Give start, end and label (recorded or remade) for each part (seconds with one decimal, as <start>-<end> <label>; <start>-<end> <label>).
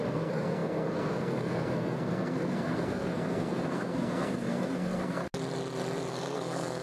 0.0-5.2 remade; 5.2-6.1 recorded; 6.1-6.8 remade